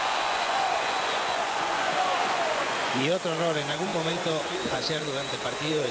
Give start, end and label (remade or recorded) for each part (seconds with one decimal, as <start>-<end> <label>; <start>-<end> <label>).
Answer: 0.0-5.9 remade